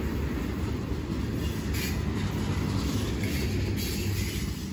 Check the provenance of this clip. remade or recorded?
recorded